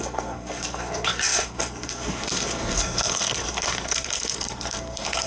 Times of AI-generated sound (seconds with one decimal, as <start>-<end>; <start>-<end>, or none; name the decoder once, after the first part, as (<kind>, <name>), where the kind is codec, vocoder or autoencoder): 0.0-5.3 (codec, SNAC)